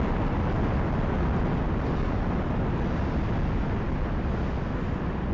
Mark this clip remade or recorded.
recorded